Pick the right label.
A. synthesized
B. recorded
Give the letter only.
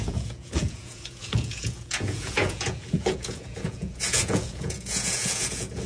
A